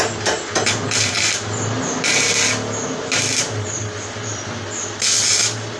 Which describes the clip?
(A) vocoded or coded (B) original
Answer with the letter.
B